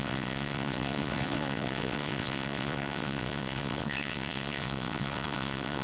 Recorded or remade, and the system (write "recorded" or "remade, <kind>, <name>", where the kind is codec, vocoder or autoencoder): remade, vocoder, WaveNeXt